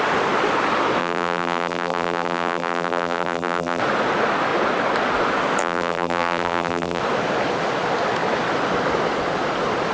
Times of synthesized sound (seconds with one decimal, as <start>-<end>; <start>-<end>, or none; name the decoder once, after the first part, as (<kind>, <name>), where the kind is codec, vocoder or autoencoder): 1.0-3.8 (vocoder, BigVGAN v2); 5.6-7.0